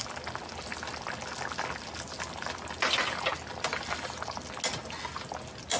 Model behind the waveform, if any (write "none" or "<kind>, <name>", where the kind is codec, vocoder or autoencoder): none